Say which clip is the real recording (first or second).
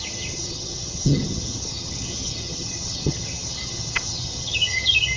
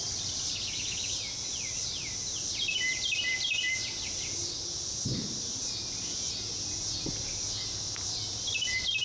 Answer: second